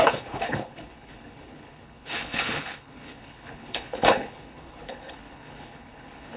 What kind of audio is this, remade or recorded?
remade